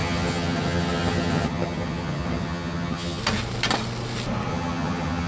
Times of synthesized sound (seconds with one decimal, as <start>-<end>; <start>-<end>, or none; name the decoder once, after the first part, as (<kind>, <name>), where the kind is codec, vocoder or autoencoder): 0.0-3.2 (vocoder, HiFi-GAN); 4.5-5.3